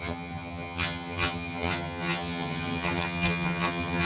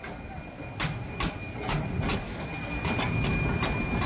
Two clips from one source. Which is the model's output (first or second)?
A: first